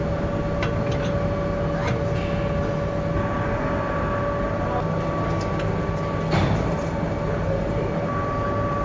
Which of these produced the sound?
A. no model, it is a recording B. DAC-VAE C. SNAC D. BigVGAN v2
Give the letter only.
A